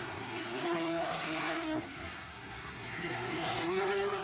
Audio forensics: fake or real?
fake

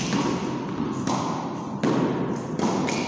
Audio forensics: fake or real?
real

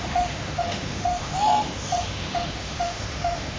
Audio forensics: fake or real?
fake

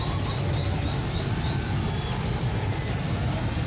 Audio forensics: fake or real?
real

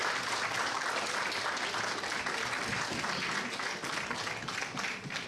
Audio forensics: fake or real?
real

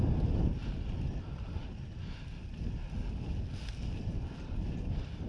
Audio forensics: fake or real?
real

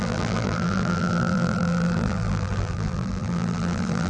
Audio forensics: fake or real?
fake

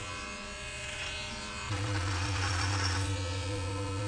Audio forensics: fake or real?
fake